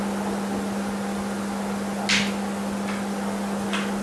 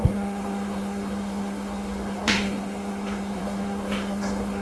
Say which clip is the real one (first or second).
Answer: first